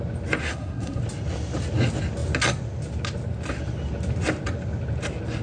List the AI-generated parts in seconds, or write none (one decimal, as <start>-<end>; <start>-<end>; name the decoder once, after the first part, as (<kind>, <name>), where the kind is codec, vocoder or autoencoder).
0.4-1.0 (codec, SNAC)

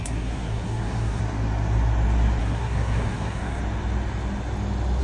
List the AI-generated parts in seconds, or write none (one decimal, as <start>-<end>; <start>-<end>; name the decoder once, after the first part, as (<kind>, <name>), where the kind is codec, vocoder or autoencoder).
0.0-1.2 (codec, SNAC); 2.4-3.6

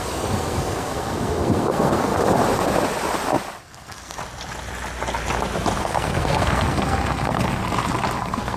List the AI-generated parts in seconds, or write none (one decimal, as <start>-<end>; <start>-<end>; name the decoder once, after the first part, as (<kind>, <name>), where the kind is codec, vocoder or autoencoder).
0.0-2.1 (codec, SNAC); 3.6-4.2; 5.8-7.6; 8.2-8.6

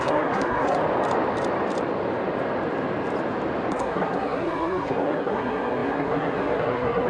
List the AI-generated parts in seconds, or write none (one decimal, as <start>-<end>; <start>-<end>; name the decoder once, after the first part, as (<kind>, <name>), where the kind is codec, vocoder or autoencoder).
0.0-0.8 (codec, SNAC); 3.7-7.1